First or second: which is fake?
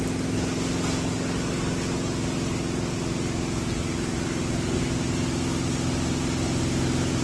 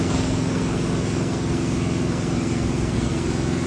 second